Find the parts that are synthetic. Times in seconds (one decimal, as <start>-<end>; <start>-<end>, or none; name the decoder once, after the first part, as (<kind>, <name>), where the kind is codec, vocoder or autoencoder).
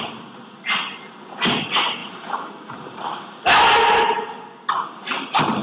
2.0-3.9 (vocoder, BigVGAN v2)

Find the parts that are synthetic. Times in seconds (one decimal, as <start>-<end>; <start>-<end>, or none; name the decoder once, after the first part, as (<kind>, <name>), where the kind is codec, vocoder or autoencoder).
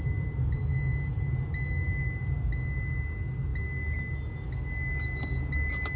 none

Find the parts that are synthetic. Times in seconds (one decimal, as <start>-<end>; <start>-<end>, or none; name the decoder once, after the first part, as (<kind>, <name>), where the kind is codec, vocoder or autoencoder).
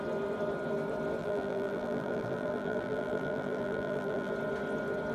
1.2-4.3 (vocoder, BigVGAN v2)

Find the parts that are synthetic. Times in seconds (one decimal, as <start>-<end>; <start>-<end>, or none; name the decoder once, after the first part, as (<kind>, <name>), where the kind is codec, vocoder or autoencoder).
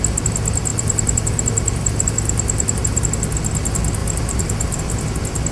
0.7-3.0 (vocoder, BigVGAN v2); 4.0-4.8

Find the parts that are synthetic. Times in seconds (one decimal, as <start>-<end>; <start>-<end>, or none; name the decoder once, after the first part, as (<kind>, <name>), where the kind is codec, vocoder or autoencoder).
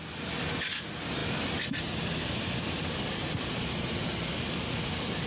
1.2-4.4 (vocoder, BigVGAN v2)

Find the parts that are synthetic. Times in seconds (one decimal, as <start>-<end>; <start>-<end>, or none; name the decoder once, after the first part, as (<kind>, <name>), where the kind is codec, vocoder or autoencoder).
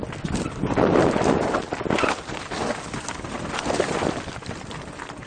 none